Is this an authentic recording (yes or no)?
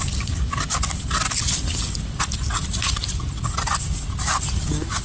yes